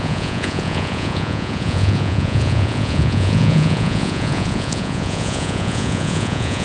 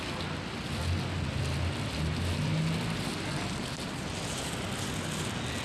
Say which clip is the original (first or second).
second